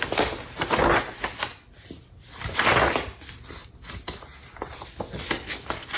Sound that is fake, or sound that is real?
real